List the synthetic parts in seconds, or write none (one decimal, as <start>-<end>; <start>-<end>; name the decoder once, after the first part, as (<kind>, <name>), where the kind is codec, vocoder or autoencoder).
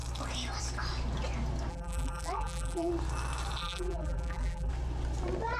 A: 1.7-2.9 (vocoder, BigVGAN v2); 3.6-4.7